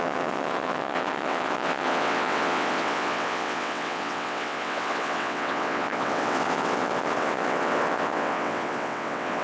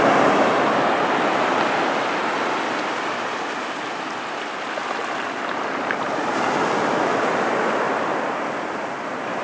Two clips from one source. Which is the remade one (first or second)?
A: first